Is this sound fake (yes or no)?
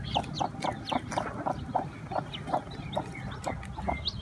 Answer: no